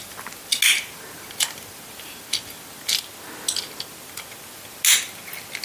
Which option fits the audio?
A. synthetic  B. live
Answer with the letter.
B